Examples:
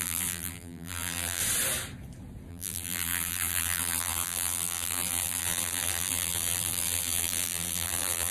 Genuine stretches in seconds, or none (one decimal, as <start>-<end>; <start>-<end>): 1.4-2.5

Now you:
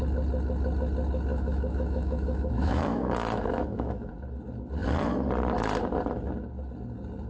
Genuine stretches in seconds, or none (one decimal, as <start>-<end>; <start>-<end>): 0.0-1.3; 4.1-7.3

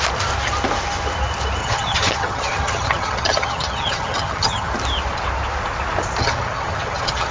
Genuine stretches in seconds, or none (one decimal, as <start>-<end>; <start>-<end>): 0.0-1.6; 4.7-6.2